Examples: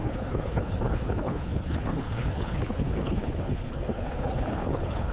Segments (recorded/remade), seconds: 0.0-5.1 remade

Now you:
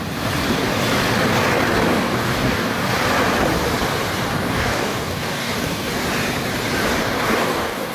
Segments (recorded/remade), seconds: 0.0-1.9 recorded; 1.9-2.7 remade; 2.7-4.3 recorded; 4.3-5.9 remade; 5.9-7.0 recorded; 7.0-7.9 remade

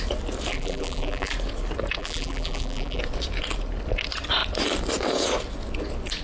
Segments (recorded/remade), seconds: 0.0-0.5 recorded; 0.5-1.3 remade; 1.3-2.0 recorded; 2.0-3.0 remade; 3.0-6.2 recorded

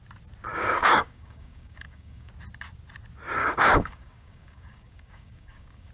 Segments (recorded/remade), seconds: 0.0-0.5 recorded; 0.5-2.3 remade; 2.3-3.4 recorded; 3.4-5.9 remade

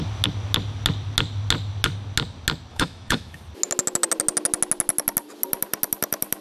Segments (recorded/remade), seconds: 0.0-2.7 recorded; 2.7-3.4 remade; 3.4-6.4 recorded